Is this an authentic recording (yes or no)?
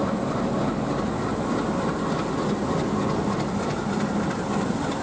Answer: yes